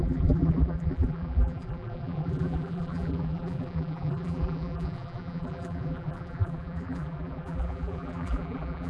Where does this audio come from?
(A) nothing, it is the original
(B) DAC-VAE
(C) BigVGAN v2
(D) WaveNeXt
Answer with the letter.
C